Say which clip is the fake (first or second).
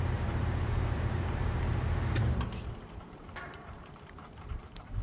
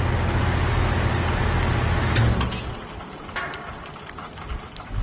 first